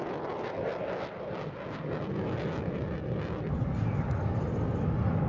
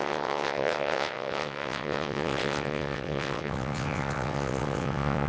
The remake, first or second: second